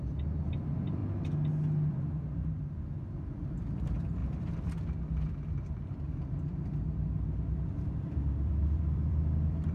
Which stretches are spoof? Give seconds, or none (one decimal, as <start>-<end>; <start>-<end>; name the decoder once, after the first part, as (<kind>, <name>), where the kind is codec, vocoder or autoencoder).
0.0-1.0 (vocoder, BigVGAN v2); 1.9-9.7